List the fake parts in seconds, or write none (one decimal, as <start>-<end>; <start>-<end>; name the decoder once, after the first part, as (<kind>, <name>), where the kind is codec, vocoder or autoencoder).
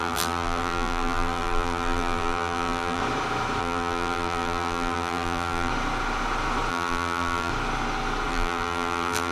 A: 0.0-3.0 (vocoder, BigVGAN v2); 3.6-5.7; 6.7-7.5; 8.3-9.3